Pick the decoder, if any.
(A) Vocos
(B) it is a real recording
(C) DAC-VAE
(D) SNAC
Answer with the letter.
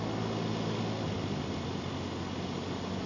B